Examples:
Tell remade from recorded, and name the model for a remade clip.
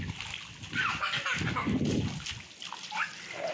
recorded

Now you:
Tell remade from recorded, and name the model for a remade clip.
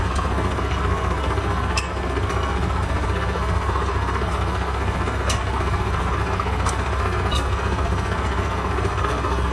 remade, codec, SNAC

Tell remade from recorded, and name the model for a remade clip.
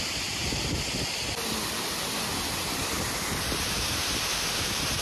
recorded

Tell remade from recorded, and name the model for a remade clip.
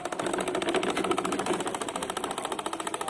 recorded